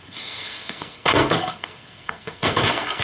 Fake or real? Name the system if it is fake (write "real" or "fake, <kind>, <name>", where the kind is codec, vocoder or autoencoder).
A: fake, codec, SNAC